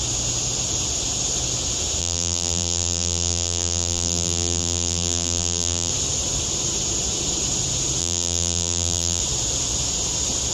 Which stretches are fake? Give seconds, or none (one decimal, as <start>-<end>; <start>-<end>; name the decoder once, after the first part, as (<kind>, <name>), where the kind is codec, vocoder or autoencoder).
2.0-5.9 (vocoder, BigVGAN v2); 8.0-9.2